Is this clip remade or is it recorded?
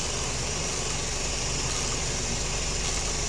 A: recorded